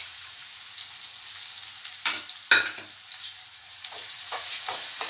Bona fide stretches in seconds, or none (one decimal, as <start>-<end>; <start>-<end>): 0.4-3.5